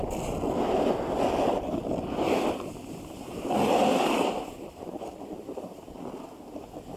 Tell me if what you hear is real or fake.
real